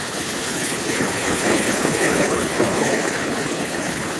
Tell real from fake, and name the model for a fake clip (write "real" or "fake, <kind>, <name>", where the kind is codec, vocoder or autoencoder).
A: fake, codec, HILCodec